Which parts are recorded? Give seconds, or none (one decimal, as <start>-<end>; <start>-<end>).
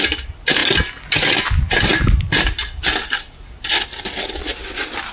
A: 0.0-5.1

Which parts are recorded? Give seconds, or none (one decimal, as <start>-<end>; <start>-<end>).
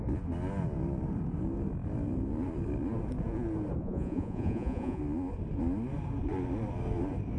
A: 0.0-3.8; 5.0-7.4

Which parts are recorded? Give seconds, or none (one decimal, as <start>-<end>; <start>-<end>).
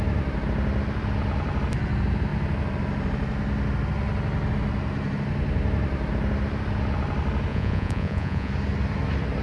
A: 0.0-7.5; 8.5-9.4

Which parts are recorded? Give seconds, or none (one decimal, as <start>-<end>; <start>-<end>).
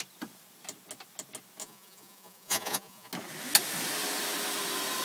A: 0.0-1.6; 3.1-5.0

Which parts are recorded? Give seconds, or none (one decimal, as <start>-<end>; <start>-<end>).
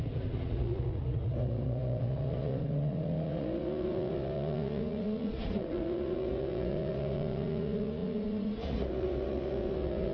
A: none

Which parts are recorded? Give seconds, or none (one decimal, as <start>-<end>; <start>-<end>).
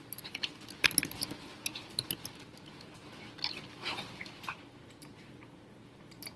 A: 0.0-6.4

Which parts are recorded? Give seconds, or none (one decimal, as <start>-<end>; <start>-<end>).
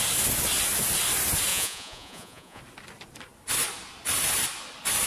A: 0.0-1.5; 2.6-5.1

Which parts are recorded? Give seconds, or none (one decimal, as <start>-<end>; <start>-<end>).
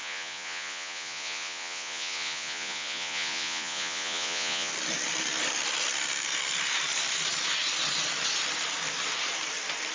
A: 4.7-9.9